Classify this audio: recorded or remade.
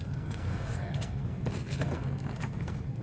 remade